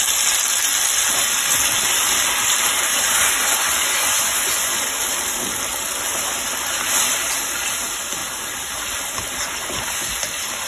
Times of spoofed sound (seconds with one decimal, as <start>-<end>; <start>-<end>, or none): 2.9-4.8